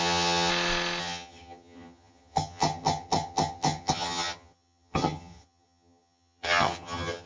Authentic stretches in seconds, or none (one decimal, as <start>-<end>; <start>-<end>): 0.5-1.0